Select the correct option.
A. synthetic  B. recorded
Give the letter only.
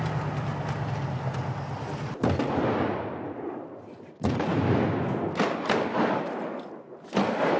B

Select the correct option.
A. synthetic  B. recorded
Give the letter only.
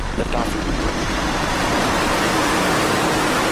A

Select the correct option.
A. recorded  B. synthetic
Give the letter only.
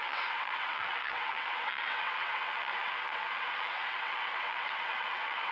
B